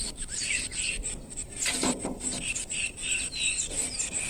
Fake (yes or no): yes